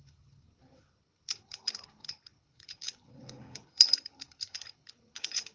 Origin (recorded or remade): remade